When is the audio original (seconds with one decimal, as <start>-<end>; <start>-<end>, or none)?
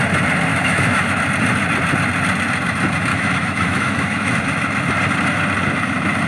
0.0-0.5; 1.2-3.1; 4.3-6.3